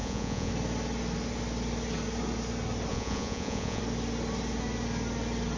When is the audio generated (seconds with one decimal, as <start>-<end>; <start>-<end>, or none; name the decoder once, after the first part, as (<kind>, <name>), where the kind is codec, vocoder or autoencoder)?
0.0-0.5 (vocoder, Vocos); 2.9-3.8